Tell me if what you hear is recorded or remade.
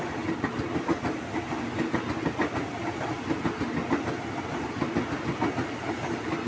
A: recorded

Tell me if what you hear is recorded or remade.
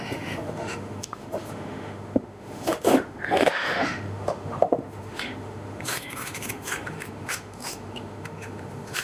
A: remade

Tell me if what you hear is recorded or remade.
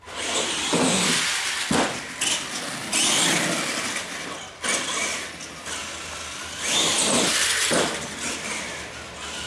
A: recorded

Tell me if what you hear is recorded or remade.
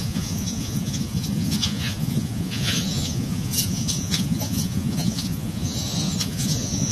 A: remade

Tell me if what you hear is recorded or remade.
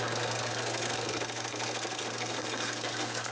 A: remade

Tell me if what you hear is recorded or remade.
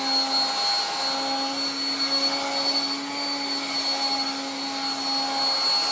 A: recorded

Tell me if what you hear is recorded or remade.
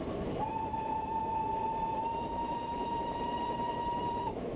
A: remade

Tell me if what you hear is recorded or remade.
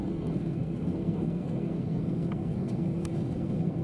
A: remade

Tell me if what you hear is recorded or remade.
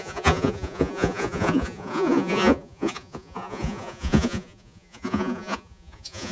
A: remade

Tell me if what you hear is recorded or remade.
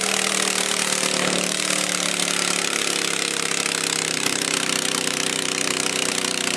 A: remade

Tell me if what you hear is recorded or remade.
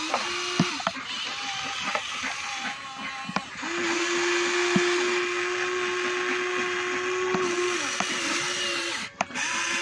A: recorded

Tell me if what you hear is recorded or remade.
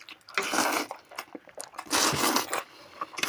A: recorded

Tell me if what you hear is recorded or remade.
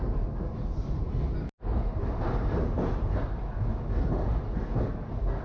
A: recorded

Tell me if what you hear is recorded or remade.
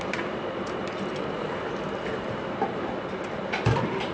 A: recorded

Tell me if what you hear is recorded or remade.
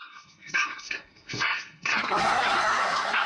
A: remade